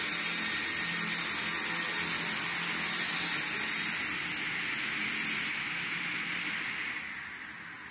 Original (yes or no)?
yes